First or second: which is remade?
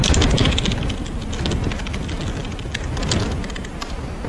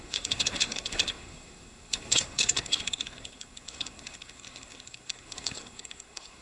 second